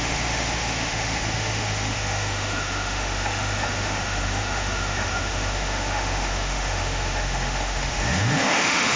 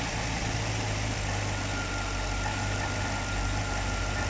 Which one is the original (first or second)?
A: second